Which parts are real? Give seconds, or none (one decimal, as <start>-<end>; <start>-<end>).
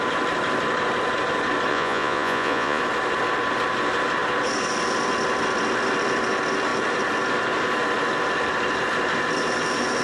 0.0-1.7; 2.8-10.0